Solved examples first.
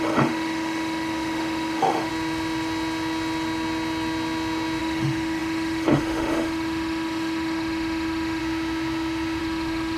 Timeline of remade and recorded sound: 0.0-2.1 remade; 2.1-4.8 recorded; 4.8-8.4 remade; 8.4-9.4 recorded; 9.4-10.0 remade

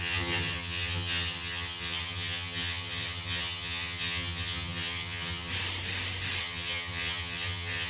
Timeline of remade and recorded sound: 0.0-5.5 remade; 5.5-6.4 recorded; 6.4-7.9 remade

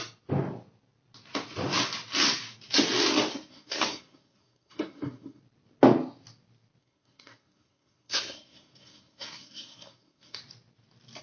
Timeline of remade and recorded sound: 0.0-3.3 recorded; 3.3-5.4 remade; 5.4-6.8 recorded; 6.8-10.4 remade; 10.4-11.2 recorded

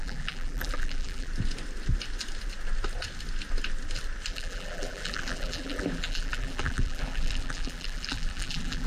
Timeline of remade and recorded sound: 0.0-1.3 remade; 1.3-4.3 recorded; 4.3-8.9 remade

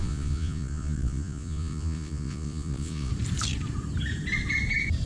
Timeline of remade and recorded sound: 0.0-3.1 remade; 3.1-5.1 recorded

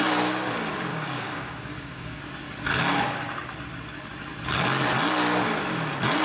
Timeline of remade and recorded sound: 0.0-0.9 recorded; 0.9-2.2 remade; 2.2-6.2 recorded

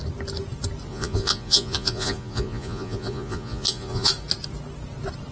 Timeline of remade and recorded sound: 0.0-0.9 recorded; 0.9-4.1 remade; 4.1-5.3 recorded